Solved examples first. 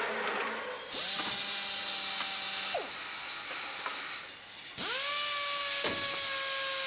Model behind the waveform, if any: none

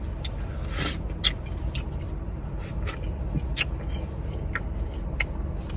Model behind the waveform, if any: none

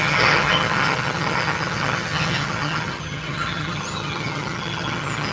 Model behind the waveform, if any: vocoder, HiFi-GAN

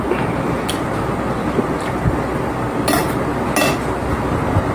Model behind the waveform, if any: none